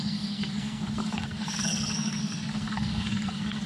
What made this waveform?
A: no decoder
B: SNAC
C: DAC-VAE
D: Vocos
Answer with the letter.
B